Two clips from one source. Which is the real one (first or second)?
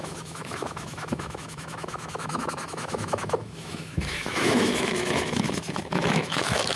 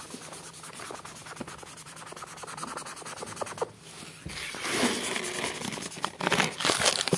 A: second